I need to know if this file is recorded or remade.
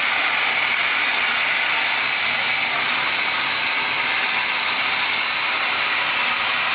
recorded